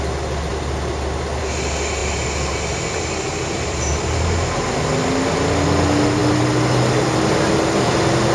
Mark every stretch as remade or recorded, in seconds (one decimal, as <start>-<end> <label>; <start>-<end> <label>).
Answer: 0.0-8.3 recorded